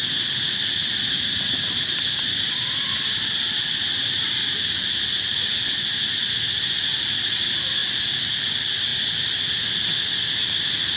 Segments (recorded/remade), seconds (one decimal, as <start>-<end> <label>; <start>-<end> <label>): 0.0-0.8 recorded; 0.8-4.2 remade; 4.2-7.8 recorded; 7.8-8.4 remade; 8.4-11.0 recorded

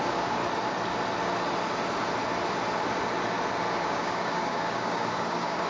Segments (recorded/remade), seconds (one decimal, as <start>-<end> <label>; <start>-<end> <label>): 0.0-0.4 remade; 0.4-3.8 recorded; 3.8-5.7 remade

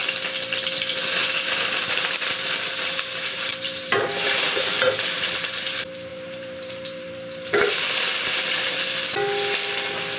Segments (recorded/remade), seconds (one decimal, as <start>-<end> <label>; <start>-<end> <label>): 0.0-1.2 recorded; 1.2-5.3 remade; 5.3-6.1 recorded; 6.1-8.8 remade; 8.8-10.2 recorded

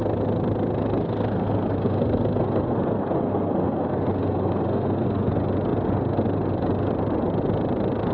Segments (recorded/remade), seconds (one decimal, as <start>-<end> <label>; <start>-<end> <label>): 0.0-1.0 recorded; 1.0-5.3 remade; 5.3-8.1 recorded